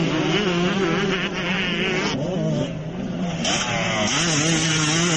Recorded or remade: recorded